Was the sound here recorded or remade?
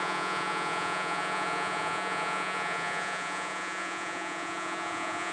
remade